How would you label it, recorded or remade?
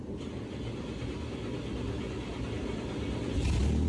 recorded